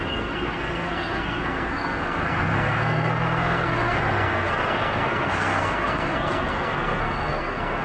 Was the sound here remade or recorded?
remade